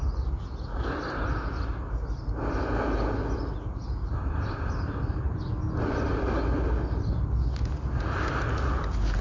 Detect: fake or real real